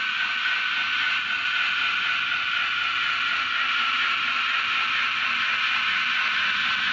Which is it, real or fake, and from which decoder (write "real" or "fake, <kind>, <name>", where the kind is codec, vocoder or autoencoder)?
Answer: real